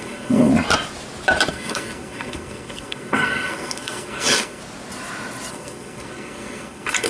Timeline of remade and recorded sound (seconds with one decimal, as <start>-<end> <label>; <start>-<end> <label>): 0.0-0.5 remade; 0.5-1.5 recorded; 1.5-4.6 remade; 4.6-5.5 recorded; 5.5-7.1 remade